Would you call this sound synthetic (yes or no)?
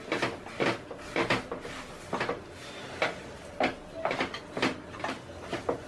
no